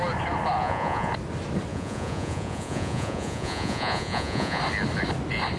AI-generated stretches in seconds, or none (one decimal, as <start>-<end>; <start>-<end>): 0.6-1.1; 1.7-4.6